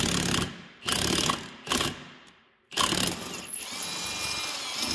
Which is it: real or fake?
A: real